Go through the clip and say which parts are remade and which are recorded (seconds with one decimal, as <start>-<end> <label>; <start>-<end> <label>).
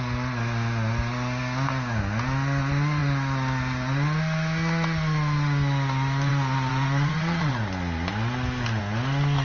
0.0-6.7 recorded; 6.7-7.5 remade; 7.5-9.4 recorded